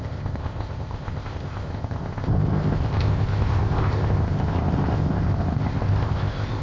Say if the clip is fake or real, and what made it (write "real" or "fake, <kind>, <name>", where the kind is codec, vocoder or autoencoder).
fake, codec, ZipCodec